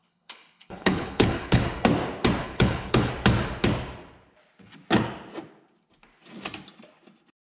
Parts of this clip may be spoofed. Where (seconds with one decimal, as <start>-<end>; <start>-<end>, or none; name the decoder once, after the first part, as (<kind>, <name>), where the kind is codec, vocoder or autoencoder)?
0.0-1.6 (codec, HILCodec); 2.4-3.1